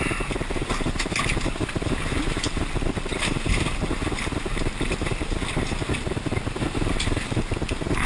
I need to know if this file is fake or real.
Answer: real